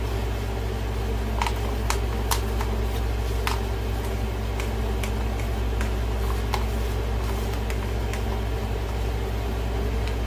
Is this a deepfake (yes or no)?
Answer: no